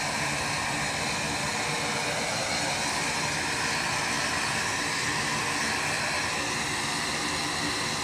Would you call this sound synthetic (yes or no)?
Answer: no